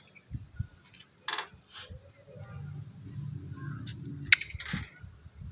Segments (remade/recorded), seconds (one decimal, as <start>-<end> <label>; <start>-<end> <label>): 0.0-5.5 recorded